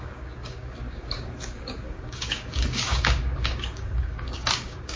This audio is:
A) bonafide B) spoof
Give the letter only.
B